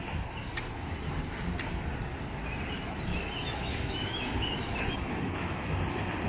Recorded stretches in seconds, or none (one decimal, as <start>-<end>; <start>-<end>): 0.0-3.1; 5.7-6.3